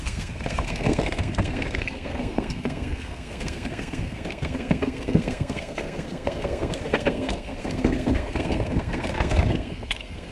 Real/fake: fake